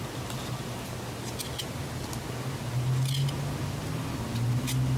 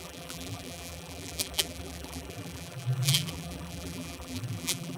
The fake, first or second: second